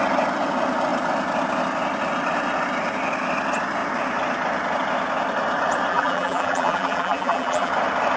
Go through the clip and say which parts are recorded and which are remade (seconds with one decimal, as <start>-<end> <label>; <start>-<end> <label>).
0.0-5.9 recorded; 5.9-7.7 remade; 7.7-8.2 recorded